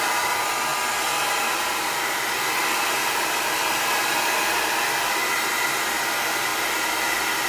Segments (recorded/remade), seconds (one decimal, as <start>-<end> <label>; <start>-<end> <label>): 0.0-6.5 recorded; 6.5-7.0 remade; 7.0-7.5 recorded